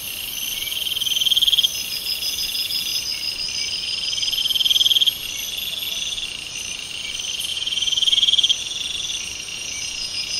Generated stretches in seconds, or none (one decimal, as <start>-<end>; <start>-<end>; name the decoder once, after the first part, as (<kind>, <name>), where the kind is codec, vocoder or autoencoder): 7.5-8.6 (vocoder, Vocos); 9.5-10.4